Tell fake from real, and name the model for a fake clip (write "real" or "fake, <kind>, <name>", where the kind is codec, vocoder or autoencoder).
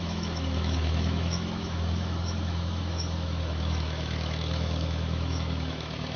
fake, autoencoder, DAC-VAE